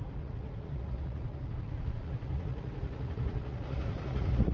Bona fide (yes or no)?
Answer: no